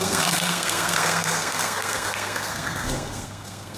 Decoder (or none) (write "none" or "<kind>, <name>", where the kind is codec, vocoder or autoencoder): codec, SNAC